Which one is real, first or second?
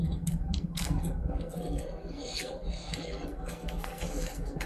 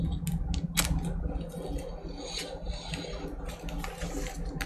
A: second